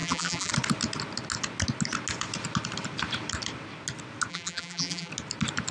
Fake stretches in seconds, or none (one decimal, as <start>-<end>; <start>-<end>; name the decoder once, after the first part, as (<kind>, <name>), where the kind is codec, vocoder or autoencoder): 0.0-0.5 (vocoder, BigVGAN v2); 4.3-5.1